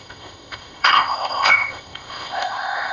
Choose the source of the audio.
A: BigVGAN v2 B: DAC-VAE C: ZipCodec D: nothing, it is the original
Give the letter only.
C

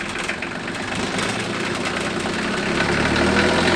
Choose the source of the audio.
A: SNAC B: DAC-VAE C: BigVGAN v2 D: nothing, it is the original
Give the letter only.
D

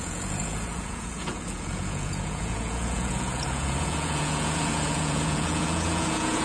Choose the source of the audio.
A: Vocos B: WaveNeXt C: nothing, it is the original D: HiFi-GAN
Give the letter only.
A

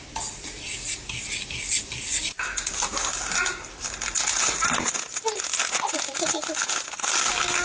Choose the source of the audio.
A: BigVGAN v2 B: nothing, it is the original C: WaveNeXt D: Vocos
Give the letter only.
B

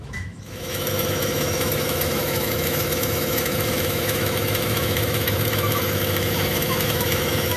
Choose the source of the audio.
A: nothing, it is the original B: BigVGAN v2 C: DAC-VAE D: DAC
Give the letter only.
C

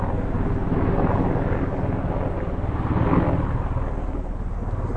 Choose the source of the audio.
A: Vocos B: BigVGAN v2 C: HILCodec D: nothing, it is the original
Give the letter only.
D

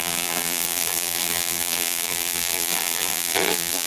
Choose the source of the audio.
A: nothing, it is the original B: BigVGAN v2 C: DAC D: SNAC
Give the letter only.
B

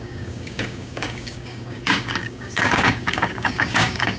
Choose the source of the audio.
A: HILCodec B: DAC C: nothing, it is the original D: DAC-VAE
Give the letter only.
B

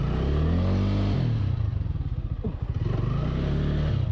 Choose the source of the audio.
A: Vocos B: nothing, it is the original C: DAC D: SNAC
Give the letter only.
B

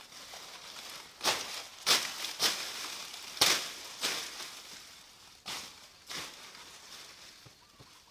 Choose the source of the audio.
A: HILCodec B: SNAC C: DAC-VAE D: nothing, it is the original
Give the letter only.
D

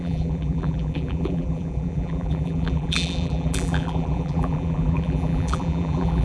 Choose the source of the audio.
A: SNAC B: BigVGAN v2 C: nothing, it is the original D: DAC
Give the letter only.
B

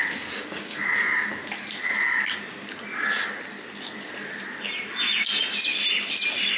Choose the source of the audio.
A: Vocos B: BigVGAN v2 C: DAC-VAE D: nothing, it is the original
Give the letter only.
D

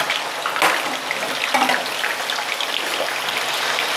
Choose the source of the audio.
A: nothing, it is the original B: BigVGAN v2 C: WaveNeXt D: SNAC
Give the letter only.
A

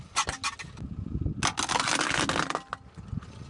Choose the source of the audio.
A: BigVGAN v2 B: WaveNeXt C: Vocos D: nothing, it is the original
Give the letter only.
D